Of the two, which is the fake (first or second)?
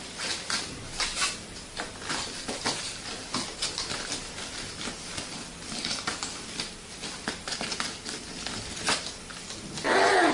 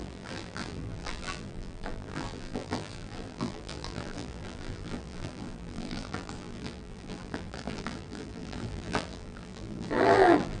second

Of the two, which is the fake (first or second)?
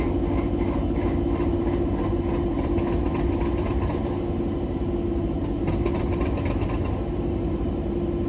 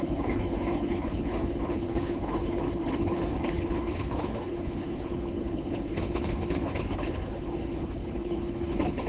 second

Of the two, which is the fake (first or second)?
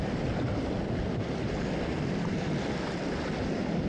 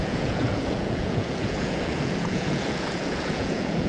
second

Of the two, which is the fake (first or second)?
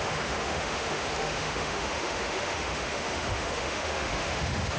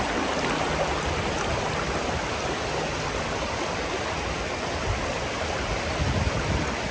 first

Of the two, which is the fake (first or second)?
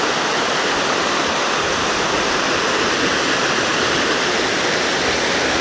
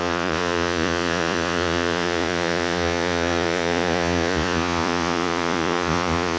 second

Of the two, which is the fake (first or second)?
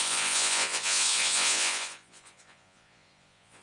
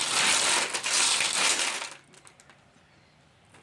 first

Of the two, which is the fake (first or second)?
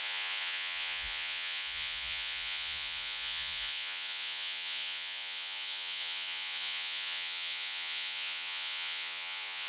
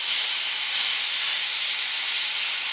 first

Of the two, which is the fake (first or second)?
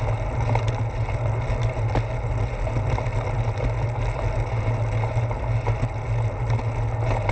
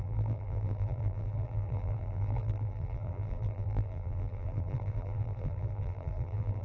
second